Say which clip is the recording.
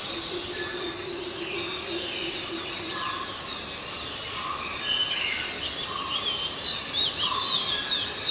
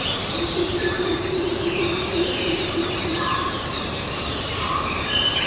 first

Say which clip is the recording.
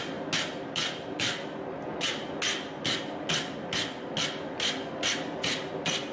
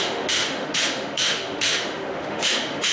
first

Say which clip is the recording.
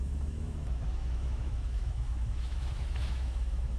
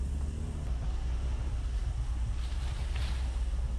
second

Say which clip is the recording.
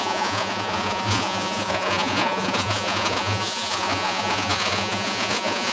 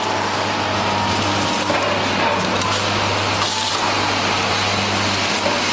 second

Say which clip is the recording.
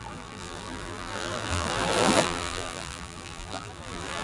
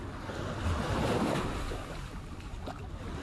second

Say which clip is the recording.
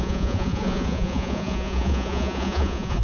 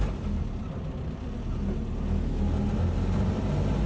second